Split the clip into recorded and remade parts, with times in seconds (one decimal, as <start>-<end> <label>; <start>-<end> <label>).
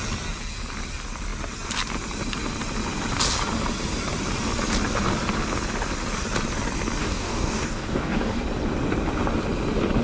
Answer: 0.0-7.0 recorded; 7.0-8.4 remade; 8.4-10.0 recorded